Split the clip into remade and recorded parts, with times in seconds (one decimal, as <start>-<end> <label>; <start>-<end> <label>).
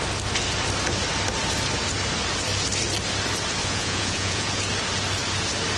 0.0-3.6 recorded; 3.6-4.6 remade; 4.6-5.8 recorded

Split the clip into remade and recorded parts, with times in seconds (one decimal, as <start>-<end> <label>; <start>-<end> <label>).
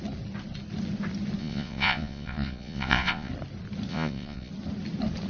0.0-1.4 recorded; 1.4-3.3 remade; 3.3-3.9 recorded; 3.9-4.5 remade; 4.5-5.3 recorded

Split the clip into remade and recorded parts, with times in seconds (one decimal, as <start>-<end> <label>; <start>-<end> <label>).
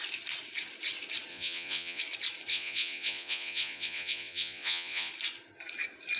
0.0-1.3 recorded; 1.3-2.0 remade; 2.0-2.5 recorded; 2.5-5.1 remade; 5.1-6.2 recorded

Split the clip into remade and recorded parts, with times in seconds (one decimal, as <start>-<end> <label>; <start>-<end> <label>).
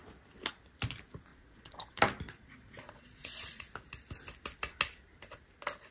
0.0-1.3 recorded; 1.3-2.0 remade; 2.0-2.4 recorded; 2.4-3.7 remade; 3.7-5.9 recorded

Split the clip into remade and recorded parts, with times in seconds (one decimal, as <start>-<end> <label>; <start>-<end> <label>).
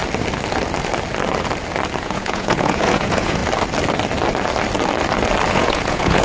0.0-2.0 recorded; 2.0-3.4 remade; 3.4-5.5 recorded; 5.5-6.2 remade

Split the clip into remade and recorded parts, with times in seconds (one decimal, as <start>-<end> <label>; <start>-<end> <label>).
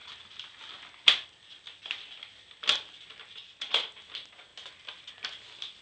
0.0-3.4 recorded; 3.4-3.9 remade; 3.9-5.8 recorded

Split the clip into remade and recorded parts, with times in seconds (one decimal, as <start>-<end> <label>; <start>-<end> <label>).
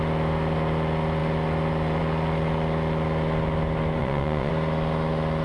0.0-4.0 recorded; 4.0-4.5 remade; 4.5-5.4 recorded